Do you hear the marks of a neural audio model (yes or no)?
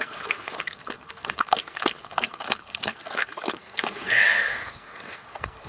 yes